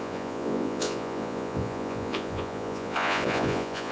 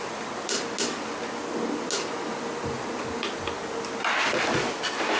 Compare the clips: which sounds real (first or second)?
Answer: second